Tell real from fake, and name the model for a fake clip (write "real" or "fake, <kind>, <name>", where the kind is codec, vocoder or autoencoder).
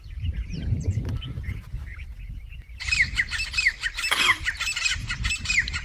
fake, vocoder, BigVGAN v2